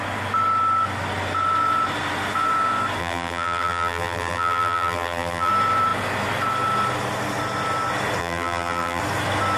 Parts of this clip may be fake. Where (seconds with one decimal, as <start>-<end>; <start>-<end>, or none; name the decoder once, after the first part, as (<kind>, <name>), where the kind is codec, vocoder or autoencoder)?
3.0-5.5 (vocoder, BigVGAN v2); 8.2-9.0